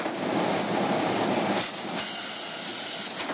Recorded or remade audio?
recorded